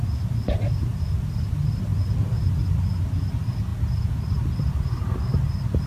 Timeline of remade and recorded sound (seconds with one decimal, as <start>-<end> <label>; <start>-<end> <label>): 0.0-5.9 recorded

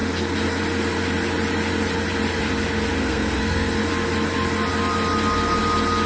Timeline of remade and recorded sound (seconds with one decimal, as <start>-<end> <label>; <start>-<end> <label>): 0.0-3.0 recorded; 3.0-3.8 remade; 3.8-6.1 recorded